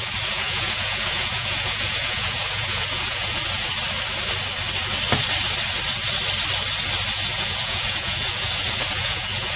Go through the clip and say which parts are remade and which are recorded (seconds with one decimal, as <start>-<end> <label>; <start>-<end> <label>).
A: 0.0-3.7 remade; 3.7-7.1 recorded; 7.1-9.6 remade